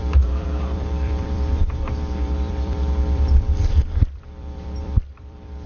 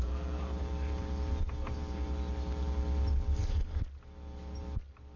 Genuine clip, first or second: second